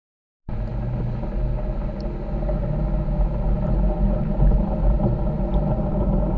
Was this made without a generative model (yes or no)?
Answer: yes